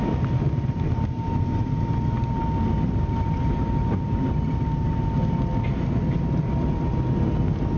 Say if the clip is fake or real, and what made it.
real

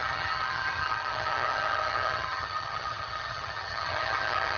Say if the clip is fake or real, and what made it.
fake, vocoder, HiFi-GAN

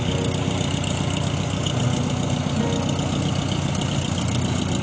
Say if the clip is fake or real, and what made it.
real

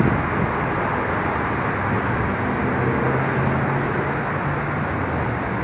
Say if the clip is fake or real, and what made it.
real